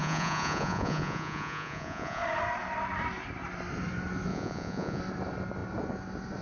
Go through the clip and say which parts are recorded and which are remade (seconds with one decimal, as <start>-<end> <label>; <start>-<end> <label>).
0.0-2.2 remade; 2.2-4.3 recorded; 4.3-5.0 remade; 5.0-6.4 recorded